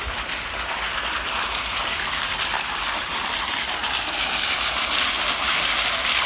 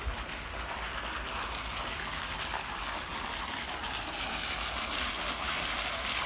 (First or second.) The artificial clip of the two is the first